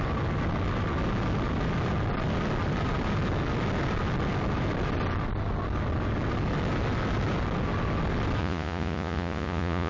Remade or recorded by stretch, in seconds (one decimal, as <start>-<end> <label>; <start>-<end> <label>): 0.0-8.4 recorded; 8.4-9.9 remade